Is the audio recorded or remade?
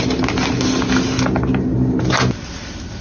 recorded